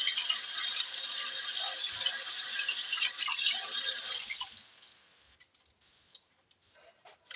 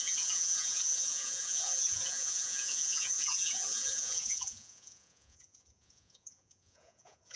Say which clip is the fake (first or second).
second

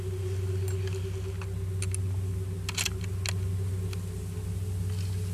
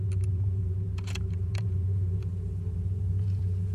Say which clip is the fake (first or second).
second